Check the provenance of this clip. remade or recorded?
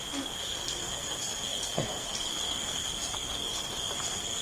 remade